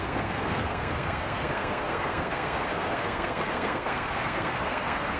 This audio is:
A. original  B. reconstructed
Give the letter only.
B